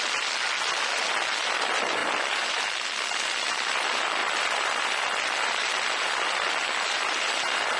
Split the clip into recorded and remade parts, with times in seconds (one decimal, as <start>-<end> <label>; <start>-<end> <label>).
0.0-7.8 recorded